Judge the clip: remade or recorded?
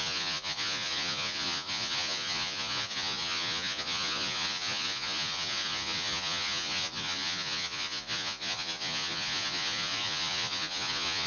remade